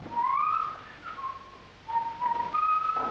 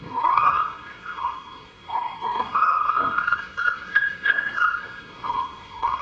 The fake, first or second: second